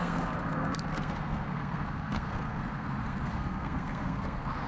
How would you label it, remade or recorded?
remade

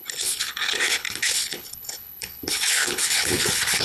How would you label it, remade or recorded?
remade